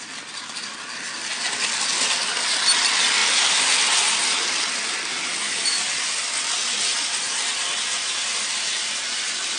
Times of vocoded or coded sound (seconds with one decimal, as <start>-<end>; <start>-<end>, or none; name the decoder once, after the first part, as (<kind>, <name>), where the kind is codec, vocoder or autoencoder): none